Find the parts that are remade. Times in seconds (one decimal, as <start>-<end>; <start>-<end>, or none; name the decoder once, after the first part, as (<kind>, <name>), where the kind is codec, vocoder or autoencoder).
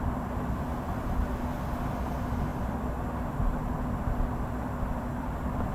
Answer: none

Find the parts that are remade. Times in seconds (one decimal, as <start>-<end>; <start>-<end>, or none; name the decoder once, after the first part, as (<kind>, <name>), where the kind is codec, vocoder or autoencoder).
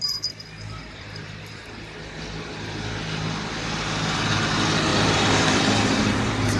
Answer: 0.8-1.4 (vocoder, BigVGAN v2); 4.9-6.6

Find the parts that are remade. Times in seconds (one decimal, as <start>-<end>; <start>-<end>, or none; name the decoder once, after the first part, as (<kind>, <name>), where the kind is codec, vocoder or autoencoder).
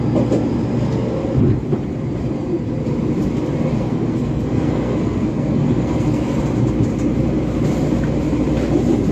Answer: 3.7-6.4 (codec, SNAC)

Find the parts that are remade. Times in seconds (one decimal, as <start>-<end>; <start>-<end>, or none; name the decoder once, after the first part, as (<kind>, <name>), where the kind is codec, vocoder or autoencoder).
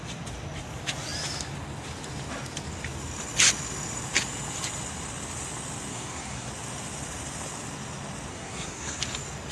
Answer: 5.9-6.5 (codec, SNAC); 8.3-9.0